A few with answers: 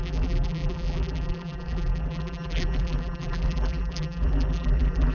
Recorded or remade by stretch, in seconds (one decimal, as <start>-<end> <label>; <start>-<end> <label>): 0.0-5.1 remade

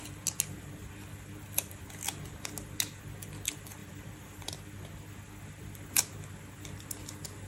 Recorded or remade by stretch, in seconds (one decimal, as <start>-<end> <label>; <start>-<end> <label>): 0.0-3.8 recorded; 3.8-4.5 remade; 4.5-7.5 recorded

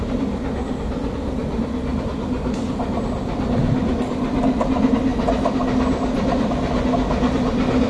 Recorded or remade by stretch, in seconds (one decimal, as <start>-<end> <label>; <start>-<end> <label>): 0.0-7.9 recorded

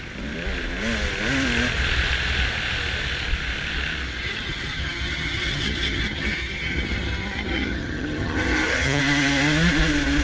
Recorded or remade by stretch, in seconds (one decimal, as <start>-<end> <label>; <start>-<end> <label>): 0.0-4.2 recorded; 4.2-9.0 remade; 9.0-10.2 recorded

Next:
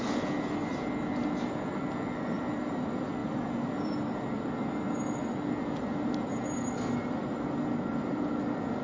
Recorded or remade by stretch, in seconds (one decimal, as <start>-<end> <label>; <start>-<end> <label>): 0.0-3.2 recorded; 3.2-5.4 remade; 5.4-8.8 recorded

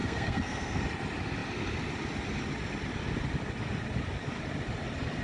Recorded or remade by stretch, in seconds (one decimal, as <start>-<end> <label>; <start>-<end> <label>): 0.0-0.8 remade; 0.8-5.2 recorded

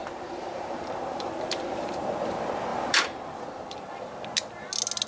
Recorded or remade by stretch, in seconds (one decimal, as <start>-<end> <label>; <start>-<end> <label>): 0.0-1.9 remade; 1.9-2.7 recorded; 2.7-3.4 remade; 3.4-5.1 recorded